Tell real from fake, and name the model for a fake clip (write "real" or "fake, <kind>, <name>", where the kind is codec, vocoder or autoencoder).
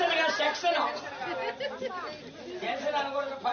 real